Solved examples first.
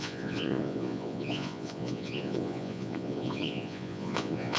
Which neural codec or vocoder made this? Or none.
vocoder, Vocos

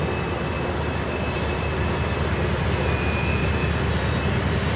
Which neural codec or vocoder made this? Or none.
none